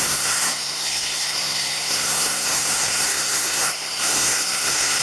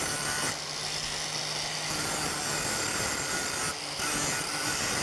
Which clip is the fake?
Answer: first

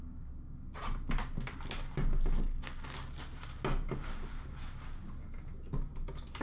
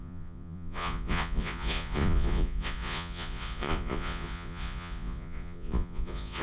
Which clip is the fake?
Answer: second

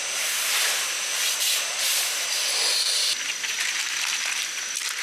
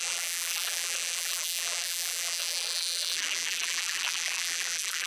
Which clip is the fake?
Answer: second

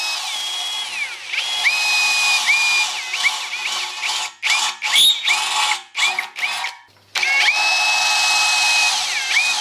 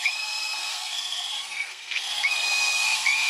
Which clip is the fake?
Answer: second